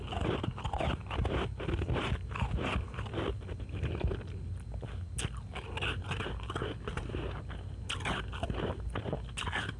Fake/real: real